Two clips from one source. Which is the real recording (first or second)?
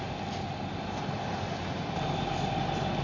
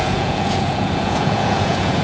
first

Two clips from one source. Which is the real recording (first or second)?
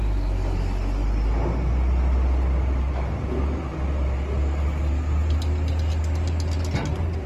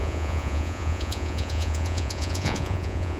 first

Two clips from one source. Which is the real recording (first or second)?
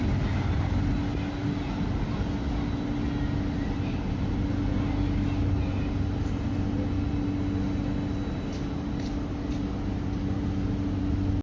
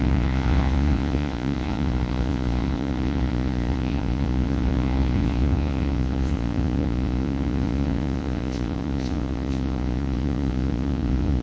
first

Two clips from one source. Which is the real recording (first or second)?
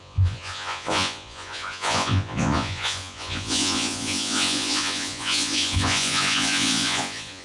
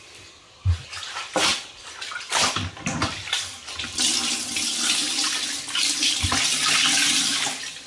second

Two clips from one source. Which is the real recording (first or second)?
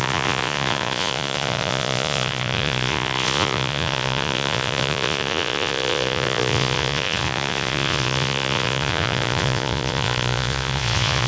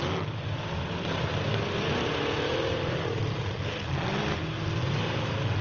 second